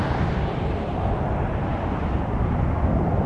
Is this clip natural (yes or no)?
yes